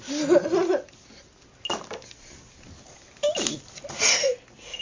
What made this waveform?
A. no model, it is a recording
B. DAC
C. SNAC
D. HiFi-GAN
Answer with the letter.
A